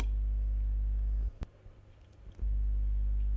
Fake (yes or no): no